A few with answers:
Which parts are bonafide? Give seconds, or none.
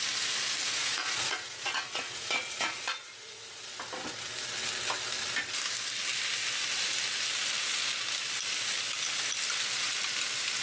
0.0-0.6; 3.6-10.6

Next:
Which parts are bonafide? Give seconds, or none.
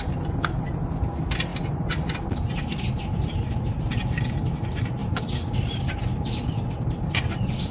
0.0-7.7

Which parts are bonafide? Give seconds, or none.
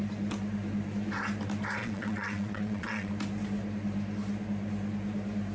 0.0-1.8; 3.1-5.5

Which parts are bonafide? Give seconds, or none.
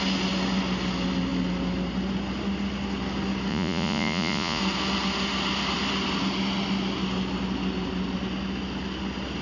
0.0-3.5; 4.6-9.4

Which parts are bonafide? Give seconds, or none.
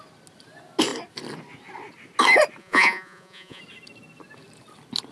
0.0-2.6; 3.6-5.1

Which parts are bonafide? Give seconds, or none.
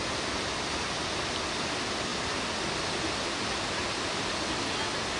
0.0-5.2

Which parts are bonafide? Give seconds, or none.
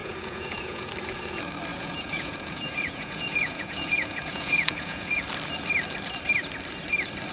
0.9-1.7; 5.2-7.3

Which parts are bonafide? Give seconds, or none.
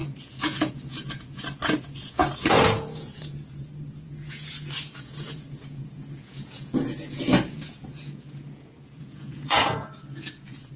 none